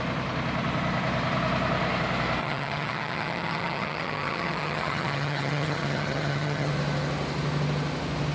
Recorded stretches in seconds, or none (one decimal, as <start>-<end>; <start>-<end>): 0.0-2.4; 6.7-8.3